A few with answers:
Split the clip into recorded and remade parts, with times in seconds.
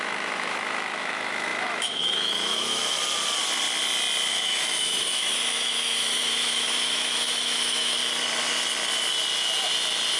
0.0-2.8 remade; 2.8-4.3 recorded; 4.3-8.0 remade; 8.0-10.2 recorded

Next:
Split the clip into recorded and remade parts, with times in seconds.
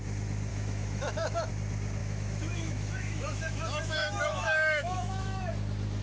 0.0-0.5 recorded; 0.5-1.5 remade; 1.5-2.0 recorded; 2.0-5.4 remade; 5.4-6.0 recorded